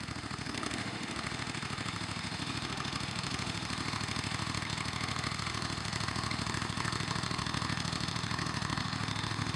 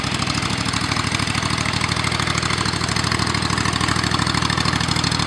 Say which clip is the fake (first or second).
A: first